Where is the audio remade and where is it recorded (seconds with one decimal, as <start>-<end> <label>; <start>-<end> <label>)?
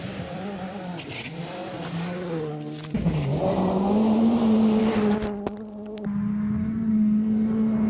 0.0-7.9 recorded